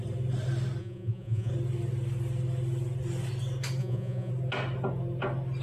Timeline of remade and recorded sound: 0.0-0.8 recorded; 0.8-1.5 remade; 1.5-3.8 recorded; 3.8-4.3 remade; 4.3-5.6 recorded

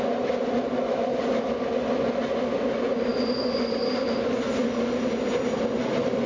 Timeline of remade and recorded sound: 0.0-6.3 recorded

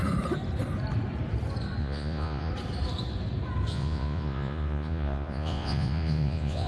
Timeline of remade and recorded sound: 0.0-1.8 recorded; 1.8-2.5 remade; 2.5-3.7 recorded; 3.7-6.7 remade

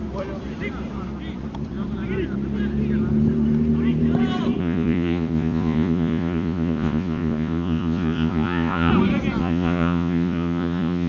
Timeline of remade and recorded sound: 0.0-4.6 recorded; 4.6-8.9 remade; 8.9-9.4 recorded; 9.4-11.1 remade

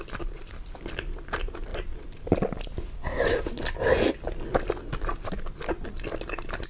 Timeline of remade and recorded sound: 0.0-6.7 recorded

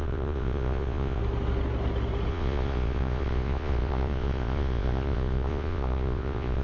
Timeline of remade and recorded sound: 0.0-1.2 remade; 1.2-2.3 recorded; 2.3-6.6 remade

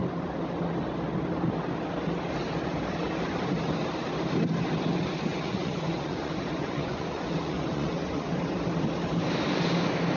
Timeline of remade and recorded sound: 0.0-5.3 recorded; 5.3-8.3 remade; 8.3-10.2 recorded